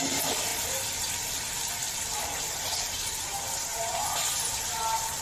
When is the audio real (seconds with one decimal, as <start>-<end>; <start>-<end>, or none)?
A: 0.0-3.7; 4.4-5.2